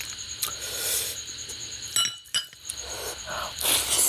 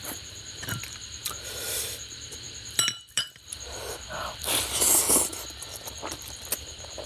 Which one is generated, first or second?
second